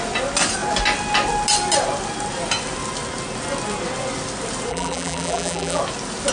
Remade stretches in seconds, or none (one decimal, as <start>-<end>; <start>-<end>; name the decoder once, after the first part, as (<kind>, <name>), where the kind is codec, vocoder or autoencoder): 4.7-5.8 (vocoder, BigVGAN v2)